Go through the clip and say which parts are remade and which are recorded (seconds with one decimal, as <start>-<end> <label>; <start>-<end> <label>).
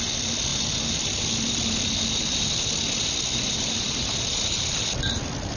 0.0-5.6 recorded